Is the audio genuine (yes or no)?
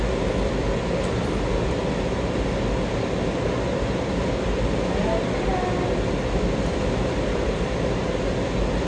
yes